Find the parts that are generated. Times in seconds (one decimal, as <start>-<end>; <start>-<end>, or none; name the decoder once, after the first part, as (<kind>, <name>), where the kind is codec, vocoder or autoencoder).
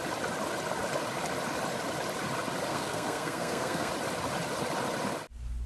2.7-3.9 (codec, SNAC)